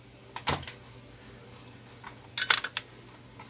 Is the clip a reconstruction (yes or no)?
no